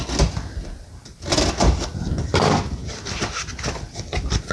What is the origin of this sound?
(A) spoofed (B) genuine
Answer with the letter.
B